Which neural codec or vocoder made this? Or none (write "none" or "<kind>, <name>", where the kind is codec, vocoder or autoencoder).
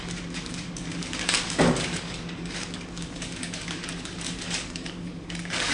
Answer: codec, DAC